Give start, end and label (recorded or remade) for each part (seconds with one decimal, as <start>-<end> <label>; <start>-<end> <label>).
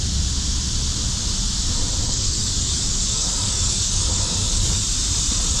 0.0-2.0 recorded; 2.0-4.8 remade; 4.8-5.6 recorded